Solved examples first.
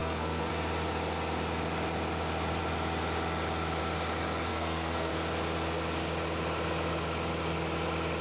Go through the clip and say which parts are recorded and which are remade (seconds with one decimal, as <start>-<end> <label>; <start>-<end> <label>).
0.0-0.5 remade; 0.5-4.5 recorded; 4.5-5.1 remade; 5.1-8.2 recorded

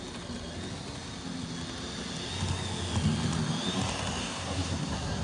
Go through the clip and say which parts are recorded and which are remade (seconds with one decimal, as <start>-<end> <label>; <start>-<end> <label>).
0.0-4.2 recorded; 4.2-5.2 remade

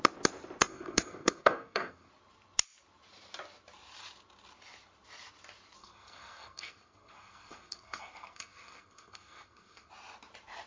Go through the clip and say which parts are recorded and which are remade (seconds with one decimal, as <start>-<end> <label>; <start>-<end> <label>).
0.0-0.6 recorded; 0.6-2.1 remade; 2.1-5.8 recorded; 5.8-9.9 remade; 9.9-10.7 recorded

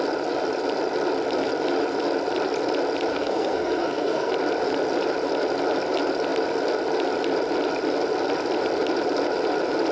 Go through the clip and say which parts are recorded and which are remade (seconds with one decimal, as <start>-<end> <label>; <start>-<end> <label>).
0.0-3.1 recorded; 3.1-4.3 remade; 4.3-9.9 recorded

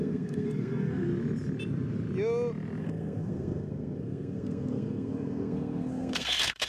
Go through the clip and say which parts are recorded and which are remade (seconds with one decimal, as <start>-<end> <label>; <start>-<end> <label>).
0.0-1.1 remade; 1.1-2.8 recorded; 2.8-6.7 remade

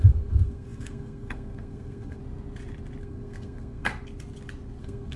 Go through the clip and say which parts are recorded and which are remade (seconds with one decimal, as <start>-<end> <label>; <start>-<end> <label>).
0.0-2.2 remade; 2.2-3.0 recorded; 3.0-3.9 remade; 3.9-4.8 recorded; 4.8-5.2 remade

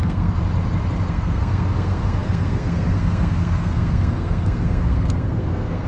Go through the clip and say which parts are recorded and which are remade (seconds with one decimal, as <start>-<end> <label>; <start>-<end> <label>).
0.0-0.4 remade; 0.4-1.1 recorded; 1.1-5.9 remade

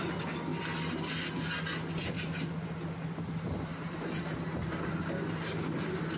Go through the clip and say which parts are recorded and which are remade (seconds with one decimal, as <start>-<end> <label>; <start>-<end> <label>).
0.0-6.2 recorded